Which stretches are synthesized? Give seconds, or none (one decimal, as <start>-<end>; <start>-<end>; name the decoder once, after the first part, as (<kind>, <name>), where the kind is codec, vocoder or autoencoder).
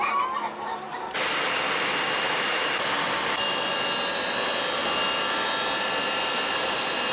none